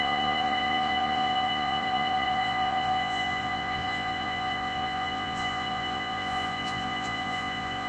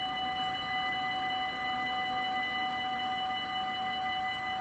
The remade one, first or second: first